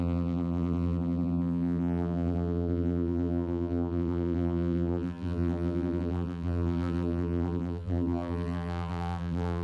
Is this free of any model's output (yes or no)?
no